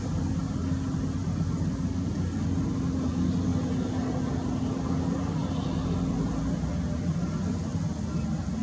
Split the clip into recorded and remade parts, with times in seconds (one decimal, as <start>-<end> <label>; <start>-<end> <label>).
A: 0.0-8.6 recorded